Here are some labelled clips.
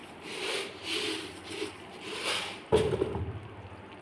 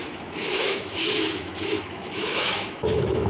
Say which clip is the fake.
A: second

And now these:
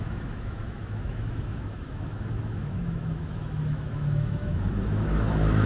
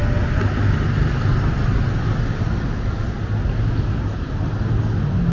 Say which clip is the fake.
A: first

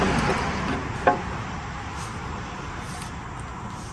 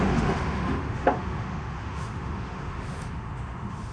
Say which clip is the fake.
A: second